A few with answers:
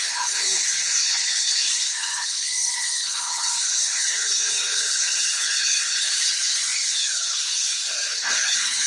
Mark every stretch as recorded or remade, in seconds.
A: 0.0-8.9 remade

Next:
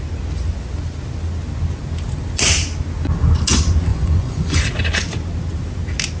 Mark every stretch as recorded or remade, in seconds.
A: 0.0-3.9 recorded; 3.9-4.7 remade; 4.7-6.2 recorded

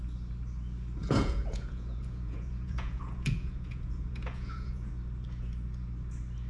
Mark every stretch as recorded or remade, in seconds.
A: 0.0-1.0 recorded; 1.0-4.9 remade; 4.9-6.5 recorded

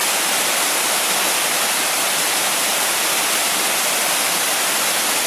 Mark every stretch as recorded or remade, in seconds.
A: 0.0-3.4 recorded; 3.4-5.3 remade